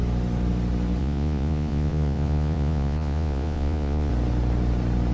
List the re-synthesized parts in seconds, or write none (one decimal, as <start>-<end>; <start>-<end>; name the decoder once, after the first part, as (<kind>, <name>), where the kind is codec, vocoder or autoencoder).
1.0-4.1 (vocoder, Vocos)